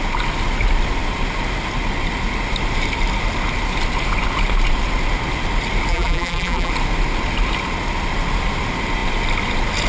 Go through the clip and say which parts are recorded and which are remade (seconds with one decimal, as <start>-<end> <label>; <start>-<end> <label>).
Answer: 0.0-5.9 recorded; 5.9-6.7 remade; 6.7-9.9 recorded